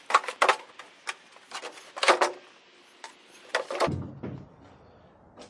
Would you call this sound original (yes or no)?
yes